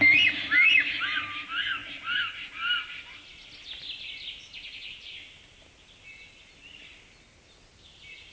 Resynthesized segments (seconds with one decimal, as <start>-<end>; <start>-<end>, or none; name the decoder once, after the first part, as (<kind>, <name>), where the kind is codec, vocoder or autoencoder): none